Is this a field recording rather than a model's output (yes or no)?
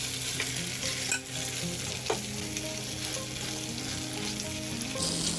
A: yes